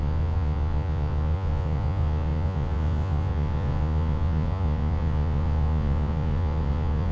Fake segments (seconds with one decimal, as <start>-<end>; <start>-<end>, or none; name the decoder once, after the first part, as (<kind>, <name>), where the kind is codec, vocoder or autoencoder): 0.0-7.1 (vocoder, Vocos)